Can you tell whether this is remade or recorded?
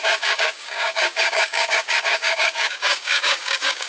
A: remade